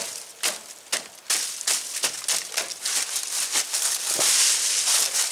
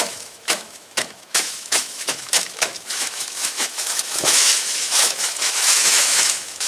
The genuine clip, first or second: first